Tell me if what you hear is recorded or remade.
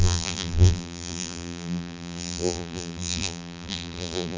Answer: remade